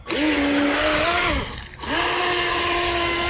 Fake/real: real